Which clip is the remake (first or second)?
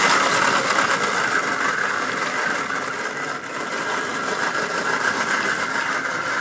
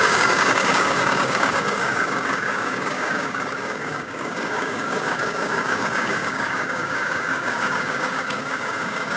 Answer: second